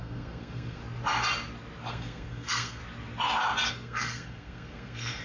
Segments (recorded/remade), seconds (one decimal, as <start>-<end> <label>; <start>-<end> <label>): 0.0-0.8 remade; 0.8-1.9 recorded; 1.9-2.8 remade; 2.8-3.7 recorded; 3.7-5.2 remade